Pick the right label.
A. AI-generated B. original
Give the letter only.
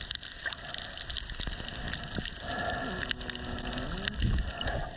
B